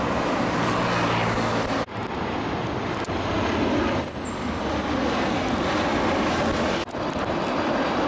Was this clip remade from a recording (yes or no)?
no